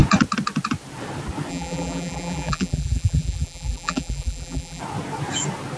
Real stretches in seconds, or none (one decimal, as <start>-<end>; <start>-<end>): 0.0-1.5; 4.8-5.8

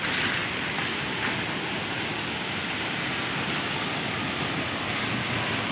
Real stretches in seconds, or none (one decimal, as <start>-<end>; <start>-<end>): 0.0-0.4; 1.2-5.7

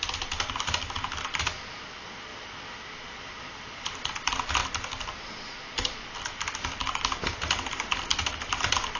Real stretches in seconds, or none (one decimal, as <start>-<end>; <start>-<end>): 0.0-9.0

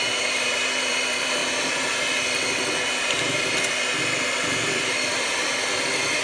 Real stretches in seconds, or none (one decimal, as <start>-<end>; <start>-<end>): 1.4-4.0; 5.3-6.2

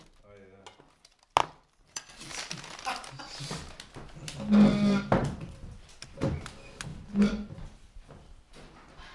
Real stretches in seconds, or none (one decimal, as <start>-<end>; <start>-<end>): 0.0-1.4; 3.2-5.2; 5.9-6.9; 8.4-9.1

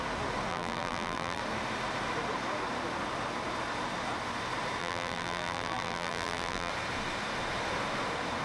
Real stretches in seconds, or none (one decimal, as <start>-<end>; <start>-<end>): 0.0-0.5; 1.4-4.8; 6.7-8.4

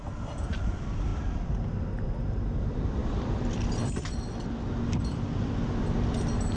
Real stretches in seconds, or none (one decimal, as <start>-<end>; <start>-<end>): 1.1-2.6